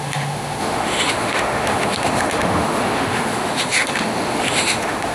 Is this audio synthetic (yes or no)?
yes